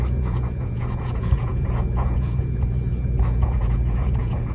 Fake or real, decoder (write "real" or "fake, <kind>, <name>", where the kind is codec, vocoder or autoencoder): fake, vocoder, Vocos